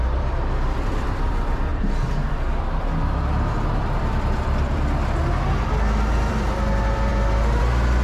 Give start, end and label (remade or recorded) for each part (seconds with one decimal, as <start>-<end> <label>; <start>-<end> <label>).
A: 0.0-8.0 remade